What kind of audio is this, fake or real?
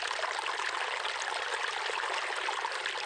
real